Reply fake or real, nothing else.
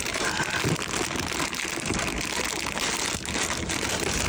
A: real